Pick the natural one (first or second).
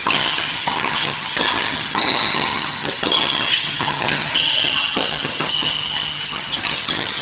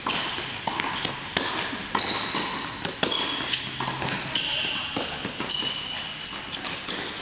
second